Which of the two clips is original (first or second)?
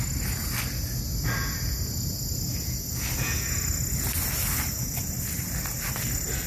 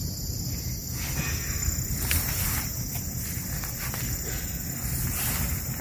first